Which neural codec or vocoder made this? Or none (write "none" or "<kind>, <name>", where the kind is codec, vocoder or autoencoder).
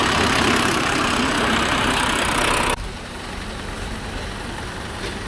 vocoder, BigVGAN v2